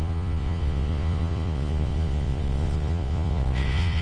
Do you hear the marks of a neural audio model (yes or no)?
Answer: yes